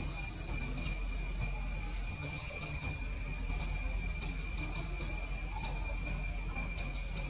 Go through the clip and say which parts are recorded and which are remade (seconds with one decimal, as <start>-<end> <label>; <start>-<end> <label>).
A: 0.0-2.1 recorded; 2.1-3.0 remade; 3.0-7.3 recorded